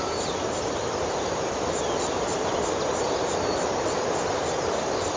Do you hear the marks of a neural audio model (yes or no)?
no